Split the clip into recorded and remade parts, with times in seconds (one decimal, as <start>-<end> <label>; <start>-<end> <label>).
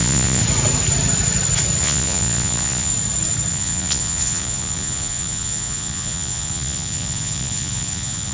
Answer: 0.0-0.4 remade; 0.4-1.8 recorded; 1.8-2.9 remade; 2.9-3.5 recorded; 3.5-8.3 remade